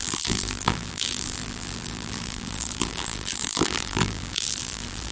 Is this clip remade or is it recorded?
remade